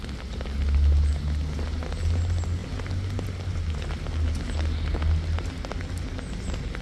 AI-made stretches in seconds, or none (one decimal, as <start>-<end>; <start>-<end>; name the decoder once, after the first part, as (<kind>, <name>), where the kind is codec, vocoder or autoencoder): none